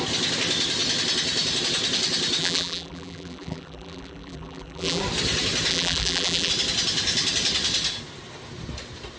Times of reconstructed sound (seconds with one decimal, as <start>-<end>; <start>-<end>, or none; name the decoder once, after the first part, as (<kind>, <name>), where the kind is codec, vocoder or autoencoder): 2.4-5.0 (vocoder, BigVGAN v2); 5.7-6.5